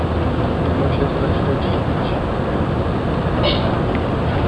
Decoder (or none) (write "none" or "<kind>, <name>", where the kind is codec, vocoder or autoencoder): none